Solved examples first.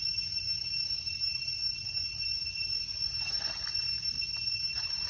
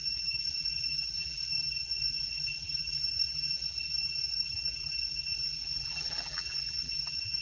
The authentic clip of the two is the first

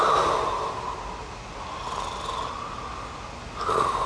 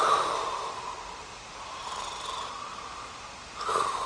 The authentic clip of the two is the first